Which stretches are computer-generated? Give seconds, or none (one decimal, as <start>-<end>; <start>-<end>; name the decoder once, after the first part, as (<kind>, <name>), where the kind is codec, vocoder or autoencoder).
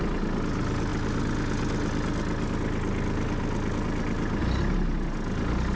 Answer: none